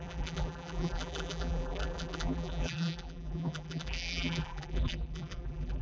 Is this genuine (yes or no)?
no